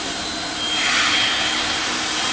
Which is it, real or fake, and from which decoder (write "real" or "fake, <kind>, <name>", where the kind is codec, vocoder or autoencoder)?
real